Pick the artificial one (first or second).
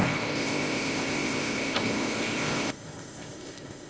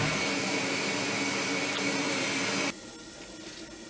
first